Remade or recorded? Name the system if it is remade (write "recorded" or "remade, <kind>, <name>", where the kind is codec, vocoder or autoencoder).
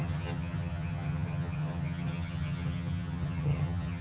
remade, vocoder, HiFi-GAN